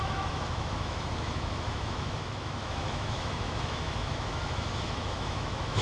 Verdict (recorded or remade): remade